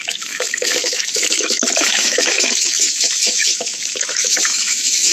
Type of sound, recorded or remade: remade